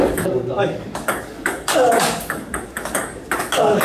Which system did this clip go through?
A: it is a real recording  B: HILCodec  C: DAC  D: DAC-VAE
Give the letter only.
C